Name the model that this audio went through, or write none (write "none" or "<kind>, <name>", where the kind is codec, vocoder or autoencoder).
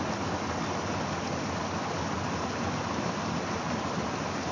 none